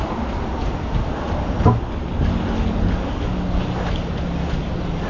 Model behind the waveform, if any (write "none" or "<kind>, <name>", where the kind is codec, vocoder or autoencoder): none